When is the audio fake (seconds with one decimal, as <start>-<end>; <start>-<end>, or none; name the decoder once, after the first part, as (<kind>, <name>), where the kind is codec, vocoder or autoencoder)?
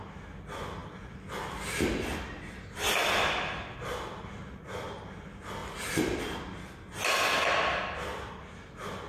none